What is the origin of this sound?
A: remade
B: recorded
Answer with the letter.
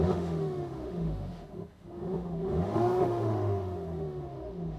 A